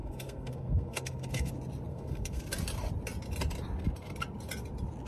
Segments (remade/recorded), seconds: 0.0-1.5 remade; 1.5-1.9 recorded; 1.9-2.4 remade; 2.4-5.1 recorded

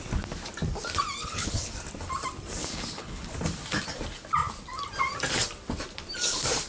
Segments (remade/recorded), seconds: 0.0-1.2 recorded; 1.2-1.7 remade; 1.7-2.6 recorded; 2.6-3.2 remade; 3.2-6.7 recorded